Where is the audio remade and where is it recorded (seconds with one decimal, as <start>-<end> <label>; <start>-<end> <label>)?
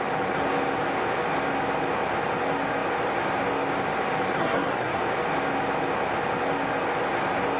0.0-4.4 recorded; 4.4-5.0 remade; 5.0-7.6 recorded